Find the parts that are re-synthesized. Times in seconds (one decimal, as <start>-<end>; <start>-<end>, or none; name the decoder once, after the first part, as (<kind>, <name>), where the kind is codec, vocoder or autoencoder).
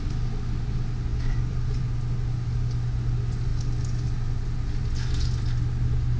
1.1-1.8 (vocoder, BigVGAN v2)